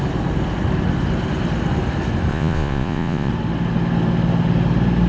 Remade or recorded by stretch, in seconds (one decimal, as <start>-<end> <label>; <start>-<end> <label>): 0.0-2.3 recorded; 2.3-3.3 remade; 3.3-5.1 recorded